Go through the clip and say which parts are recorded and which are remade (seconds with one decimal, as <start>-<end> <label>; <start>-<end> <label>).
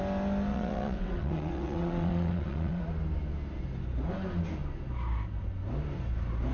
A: 0.0-0.5 recorded; 0.5-2.8 remade; 2.8-6.5 recorded